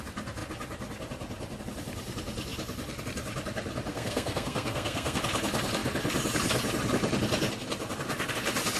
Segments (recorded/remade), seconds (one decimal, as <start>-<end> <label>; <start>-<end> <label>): 0.0-3.9 recorded; 3.9-5.2 remade; 5.2-8.8 recorded